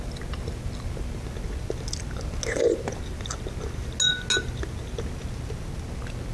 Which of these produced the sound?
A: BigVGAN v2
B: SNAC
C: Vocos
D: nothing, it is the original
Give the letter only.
D